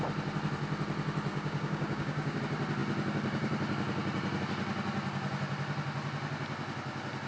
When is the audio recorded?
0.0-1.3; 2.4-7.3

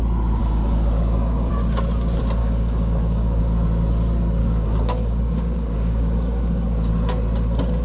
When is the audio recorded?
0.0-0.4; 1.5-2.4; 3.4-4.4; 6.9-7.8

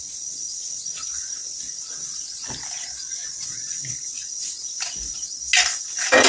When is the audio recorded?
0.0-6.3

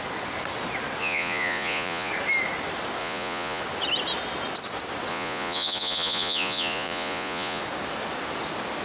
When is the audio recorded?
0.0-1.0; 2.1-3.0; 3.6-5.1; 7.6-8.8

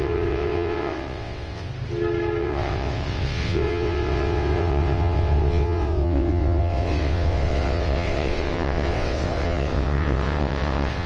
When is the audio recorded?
1.7-2.4